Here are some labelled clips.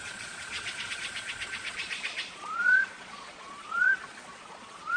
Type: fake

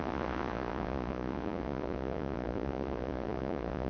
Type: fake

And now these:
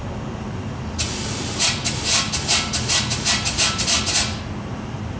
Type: real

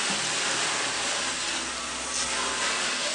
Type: real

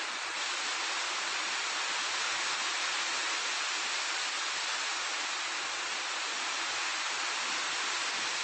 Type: real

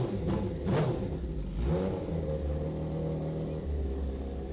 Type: real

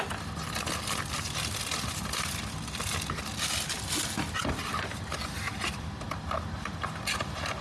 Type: real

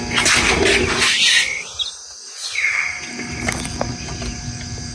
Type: real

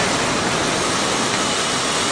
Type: real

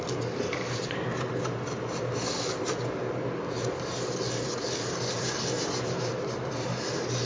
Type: real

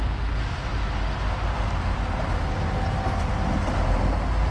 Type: real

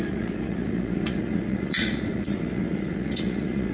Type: fake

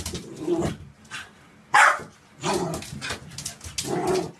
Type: real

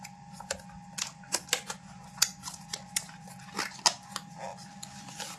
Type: real